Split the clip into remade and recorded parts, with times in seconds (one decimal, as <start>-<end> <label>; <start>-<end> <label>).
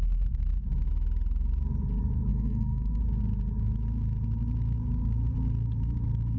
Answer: 0.0-2.3 recorded; 2.3-3.0 remade; 3.0-6.4 recorded